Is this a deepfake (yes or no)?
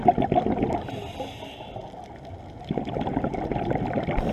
no